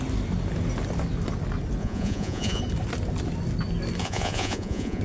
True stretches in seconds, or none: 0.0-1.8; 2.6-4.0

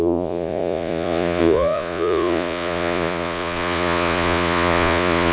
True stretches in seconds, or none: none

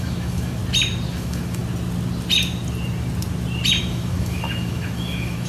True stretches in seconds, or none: 0.6-1.1; 1.6-3.8

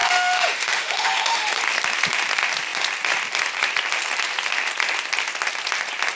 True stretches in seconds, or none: 1.6-6.1

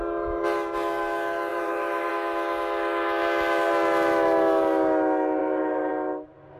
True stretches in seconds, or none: 0.0-1.5; 2.1-5.4; 5.9-6.6

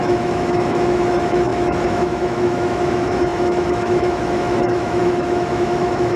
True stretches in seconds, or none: none

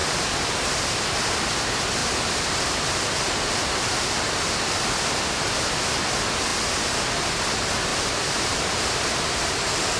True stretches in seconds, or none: 0.8-2.0; 3.0-7.9; 9.4-10.0

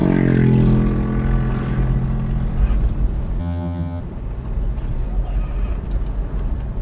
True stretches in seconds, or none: 0.0-3.4; 4.0-6.8